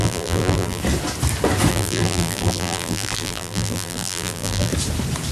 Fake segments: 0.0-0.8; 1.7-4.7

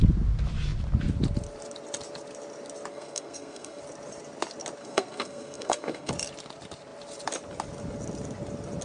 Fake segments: 2.9-3.8; 4.8-6.1

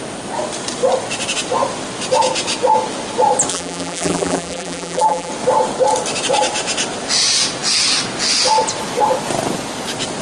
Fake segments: 3.5-5.3

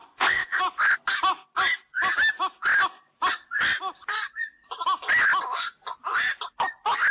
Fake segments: 0.0-0.6

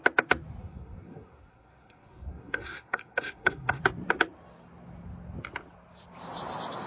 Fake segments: 0.6-3.8

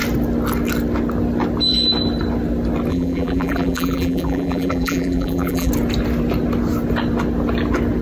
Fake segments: 2.9-5.7